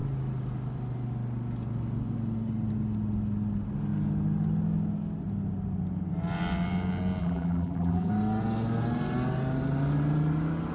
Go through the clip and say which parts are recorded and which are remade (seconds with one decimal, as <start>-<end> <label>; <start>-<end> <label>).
0.0-7.2 recorded; 7.2-8.1 remade; 8.1-10.7 recorded